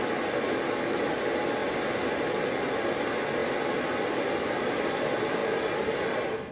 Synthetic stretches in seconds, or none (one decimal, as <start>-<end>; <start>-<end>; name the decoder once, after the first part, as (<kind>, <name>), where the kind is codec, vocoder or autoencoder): 3.4-4.2 (vocoder, BigVGAN v2)